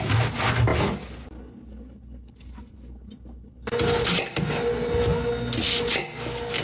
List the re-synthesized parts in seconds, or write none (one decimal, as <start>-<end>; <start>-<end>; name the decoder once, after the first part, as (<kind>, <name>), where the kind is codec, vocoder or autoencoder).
none